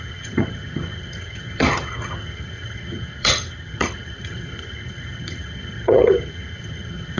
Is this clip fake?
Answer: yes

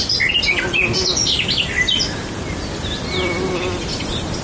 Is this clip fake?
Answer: no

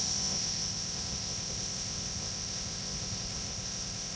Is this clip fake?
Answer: yes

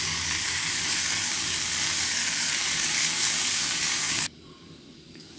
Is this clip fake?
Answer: yes